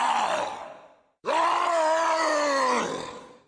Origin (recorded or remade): recorded